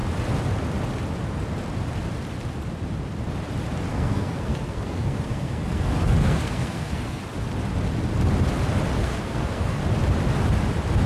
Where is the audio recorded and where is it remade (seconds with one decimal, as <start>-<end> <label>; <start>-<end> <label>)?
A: 0.0-3.9 recorded; 3.9-7.2 remade; 7.2-9.0 recorded; 9.0-9.8 remade; 9.8-11.1 recorded

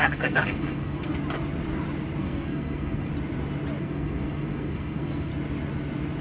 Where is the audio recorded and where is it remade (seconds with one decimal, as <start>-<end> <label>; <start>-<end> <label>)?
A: 0.0-1.1 remade; 1.1-2.2 recorded; 2.2-3.1 remade; 3.1-3.8 recorded; 3.8-5.3 remade; 5.3-6.2 recorded

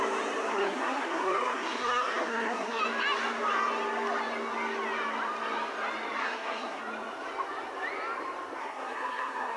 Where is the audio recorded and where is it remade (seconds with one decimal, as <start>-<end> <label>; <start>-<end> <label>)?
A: 0.0-0.5 recorded; 0.5-2.8 remade; 2.8-6.2 recorded; 6.2-6.8 remade; 6.8-8.6 recorded; 8.6-9.6 remade

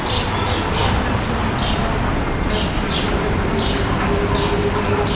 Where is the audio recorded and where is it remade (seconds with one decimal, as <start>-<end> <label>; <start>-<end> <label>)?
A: 0.0-5.1 recorded

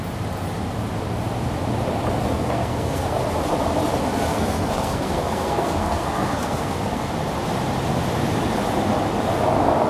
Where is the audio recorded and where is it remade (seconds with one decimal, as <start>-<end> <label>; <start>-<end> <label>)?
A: 0.0-2.3 recorded; 2.3-3.2 remade; 3.2-4.3 recorded; 4.3-7.1 remade; 7.1-9.9 recorded